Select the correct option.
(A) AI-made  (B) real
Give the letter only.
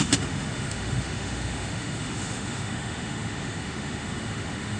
A